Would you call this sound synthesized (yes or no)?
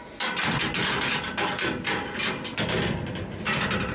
no